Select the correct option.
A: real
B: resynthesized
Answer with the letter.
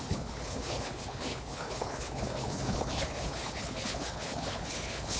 B